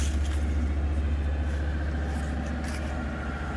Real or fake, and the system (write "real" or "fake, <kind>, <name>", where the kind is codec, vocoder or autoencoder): real